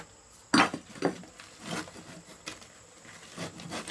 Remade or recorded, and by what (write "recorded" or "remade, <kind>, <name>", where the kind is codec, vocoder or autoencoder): recorded